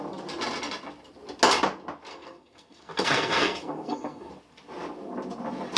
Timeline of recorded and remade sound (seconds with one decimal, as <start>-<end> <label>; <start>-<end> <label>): 0.0-2.1 recorded; 2.1-4.3 remade; 4.3-5.8 recorded